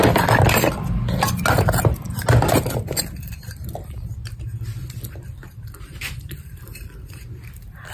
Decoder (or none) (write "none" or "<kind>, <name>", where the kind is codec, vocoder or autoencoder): none